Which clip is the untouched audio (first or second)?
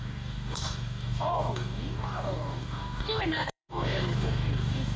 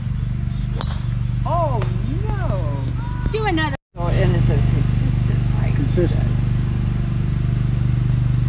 second